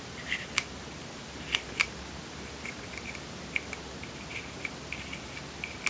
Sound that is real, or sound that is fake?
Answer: real